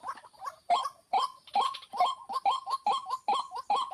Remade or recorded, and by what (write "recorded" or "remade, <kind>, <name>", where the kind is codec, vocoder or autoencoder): remade, vocoder, BigVGAN v2